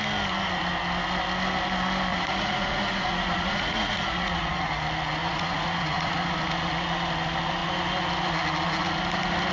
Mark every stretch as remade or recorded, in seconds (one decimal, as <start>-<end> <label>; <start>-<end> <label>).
0.0-2.1 recorded; 2.1-4.7 remade; 4.7-5.2 recorded; 5.2-6.3 remade; 6.3-9.5 recorded